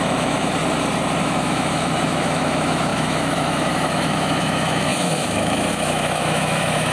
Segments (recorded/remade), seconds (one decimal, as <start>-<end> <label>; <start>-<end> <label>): 0.0-0.6 remade; 0.6-1.2 recorded; 1.2-6.9 remade